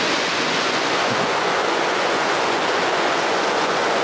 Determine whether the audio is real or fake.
fake